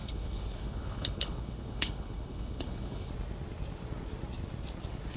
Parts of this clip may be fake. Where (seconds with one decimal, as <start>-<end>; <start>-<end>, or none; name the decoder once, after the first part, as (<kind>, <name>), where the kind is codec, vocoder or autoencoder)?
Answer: 0.0-3.1 (codec, HILCodec)

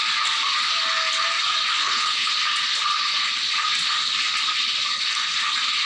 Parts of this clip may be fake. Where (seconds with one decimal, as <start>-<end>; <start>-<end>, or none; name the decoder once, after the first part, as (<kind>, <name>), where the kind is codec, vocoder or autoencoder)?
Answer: 1.8-2.3 (codec, HILCodec)

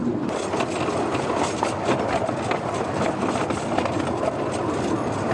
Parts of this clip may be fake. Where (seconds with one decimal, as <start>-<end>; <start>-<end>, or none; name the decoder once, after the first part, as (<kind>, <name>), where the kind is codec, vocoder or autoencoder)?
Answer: none

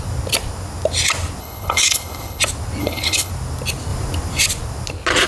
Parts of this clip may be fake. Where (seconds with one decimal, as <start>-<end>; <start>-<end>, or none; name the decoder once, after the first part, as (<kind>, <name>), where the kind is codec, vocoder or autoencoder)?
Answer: 1.4-2.4 (codec, HILCodec); 2.8-3.3

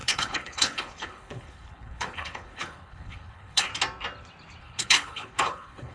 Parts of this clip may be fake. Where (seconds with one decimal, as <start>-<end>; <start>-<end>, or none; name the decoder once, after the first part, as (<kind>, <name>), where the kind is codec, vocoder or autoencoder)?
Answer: 0.0-3.7 (codec, HILCodec); 4.6-5.9

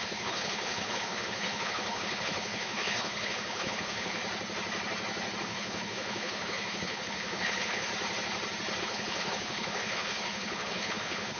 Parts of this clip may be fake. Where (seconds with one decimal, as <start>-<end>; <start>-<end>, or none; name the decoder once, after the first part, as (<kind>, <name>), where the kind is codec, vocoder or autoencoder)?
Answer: 0.0-4.2 (codec, HILCodec); 5.4-7.9; 8.8-11.4

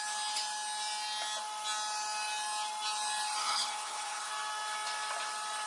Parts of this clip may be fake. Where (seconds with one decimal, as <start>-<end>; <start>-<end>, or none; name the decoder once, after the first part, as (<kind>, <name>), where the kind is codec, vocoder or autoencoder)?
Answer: 3.4-4.3 (codec, HILCodec)